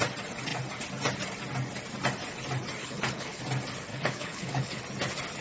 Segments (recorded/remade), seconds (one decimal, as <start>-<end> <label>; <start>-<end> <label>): 0.0-2.8 recorded; 2.8-3.4 remade; 3.4-3.9 recorded; 3.9-4.8 remade; 4.8-5.4 recorded